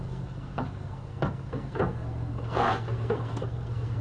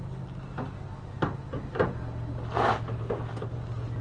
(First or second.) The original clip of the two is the second